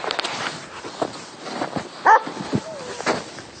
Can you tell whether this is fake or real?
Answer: real